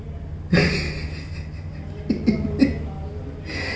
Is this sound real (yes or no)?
yes